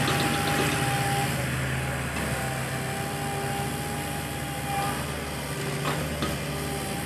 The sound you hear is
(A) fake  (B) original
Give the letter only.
B